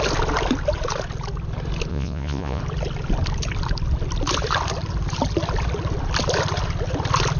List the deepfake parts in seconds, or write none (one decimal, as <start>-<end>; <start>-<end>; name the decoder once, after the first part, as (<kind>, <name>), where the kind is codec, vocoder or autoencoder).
1.9-2.6 (vocoder, Vocos)